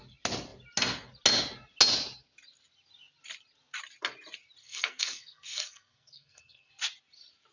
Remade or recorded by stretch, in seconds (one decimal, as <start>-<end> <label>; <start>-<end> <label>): 0.0-4.6 recorded; 4.6-6.7 remade; 6.7-7.5 recorded